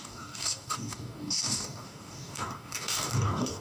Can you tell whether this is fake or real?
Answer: fake